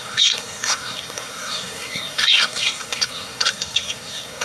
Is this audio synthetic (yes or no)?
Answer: yes